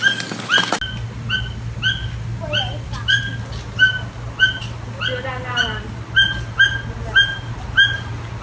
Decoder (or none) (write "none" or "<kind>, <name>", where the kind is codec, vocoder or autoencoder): none